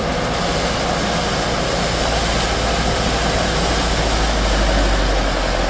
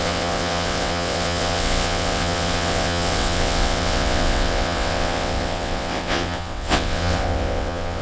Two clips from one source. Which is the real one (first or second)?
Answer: first